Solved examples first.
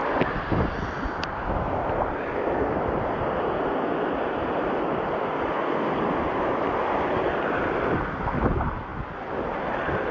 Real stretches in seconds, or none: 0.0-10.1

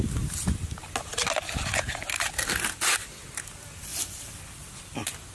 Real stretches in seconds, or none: 0.0-5.3

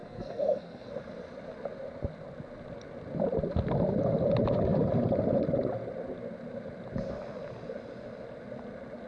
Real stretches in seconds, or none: 0.9-9.1

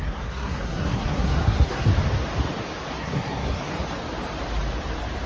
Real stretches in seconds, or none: 1.9-3.0; 3.7-5.3

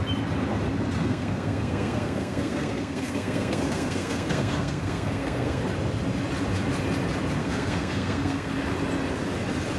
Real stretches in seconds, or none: 0.0-1.0; 5.6-7.4; 8.5-9.8

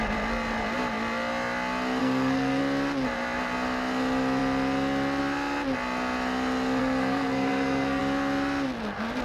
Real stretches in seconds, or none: 0.0-2.0; 2.6-6.8; 8.0-9.2

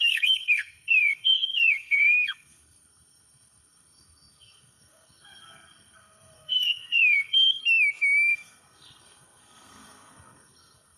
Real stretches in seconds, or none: 7.6-8.3